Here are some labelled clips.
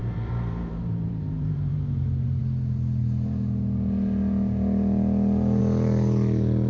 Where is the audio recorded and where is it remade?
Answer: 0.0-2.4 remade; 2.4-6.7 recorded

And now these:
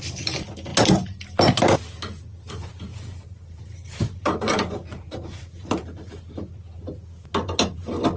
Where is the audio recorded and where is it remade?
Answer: 0.0-2.9 recorded; 2.9-6.2 remade; 6.2-8.2 recorded

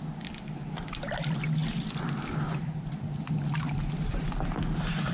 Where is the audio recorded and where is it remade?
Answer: 0.0-5.1 recorded

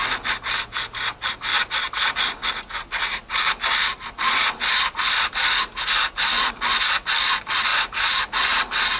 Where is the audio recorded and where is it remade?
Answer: 0.0-7.7 recorded; 7.7-8.2 remade; 8.2-9.0 recorded